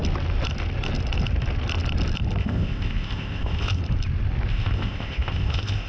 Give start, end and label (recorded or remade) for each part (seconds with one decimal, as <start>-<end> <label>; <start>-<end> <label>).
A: 0.0-2.4 recorded; 2.4-3.8 remade; 3.8-4.5 recorded; 4.5-5.9 remade